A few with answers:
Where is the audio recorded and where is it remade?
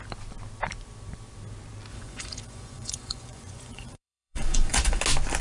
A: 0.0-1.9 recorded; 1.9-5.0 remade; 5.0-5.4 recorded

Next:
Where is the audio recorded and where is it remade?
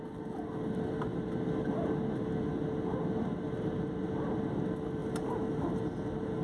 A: 0.0-6.4 recorded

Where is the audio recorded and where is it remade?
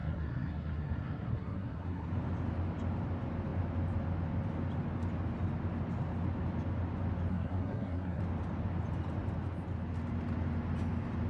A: 0.0-2.1 remade; 2.1-7.3 recorded; 7.3-8.2 remade; 8.2-11.3 recorded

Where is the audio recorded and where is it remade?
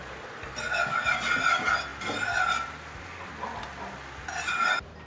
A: 0.0-5.1 recorded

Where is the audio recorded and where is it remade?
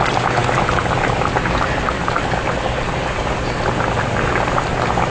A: 0.0-5.1 recorded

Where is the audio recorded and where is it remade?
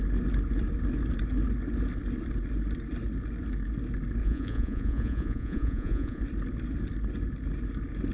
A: 0.0-4.2 recorded; 4.2-6.2 remade; 6.2-8.1 recorded